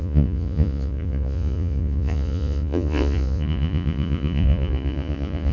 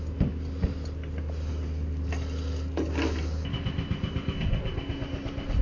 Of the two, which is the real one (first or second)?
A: second